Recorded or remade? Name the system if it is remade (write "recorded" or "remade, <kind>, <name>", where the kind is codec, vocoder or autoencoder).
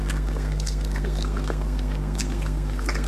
remade, codec, SNAC